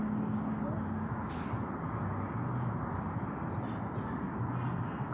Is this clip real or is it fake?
real